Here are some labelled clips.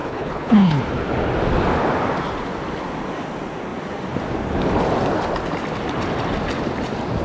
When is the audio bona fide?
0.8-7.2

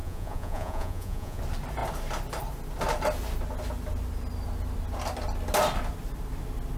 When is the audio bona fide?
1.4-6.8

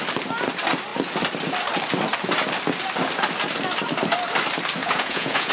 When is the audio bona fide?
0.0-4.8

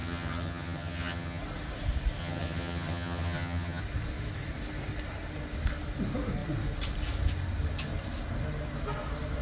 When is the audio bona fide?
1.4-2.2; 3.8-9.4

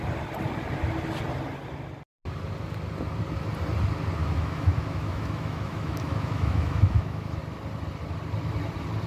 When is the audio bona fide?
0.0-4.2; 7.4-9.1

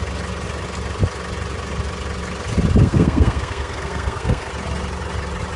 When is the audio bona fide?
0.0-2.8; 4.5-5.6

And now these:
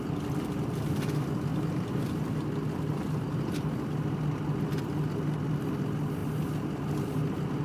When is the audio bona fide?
0.0-7.6

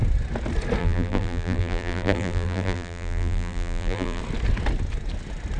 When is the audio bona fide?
0.0-0.8; 4.2-5.6